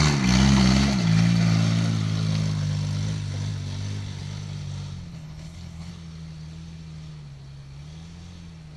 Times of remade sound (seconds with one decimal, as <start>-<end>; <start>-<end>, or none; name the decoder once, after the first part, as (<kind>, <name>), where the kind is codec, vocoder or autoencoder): 5.1-5.9 (codec, HILCodec)